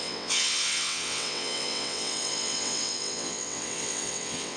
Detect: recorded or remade remade